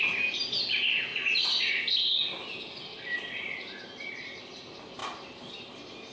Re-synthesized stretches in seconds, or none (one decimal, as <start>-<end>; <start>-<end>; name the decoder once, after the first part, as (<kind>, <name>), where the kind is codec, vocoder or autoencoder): none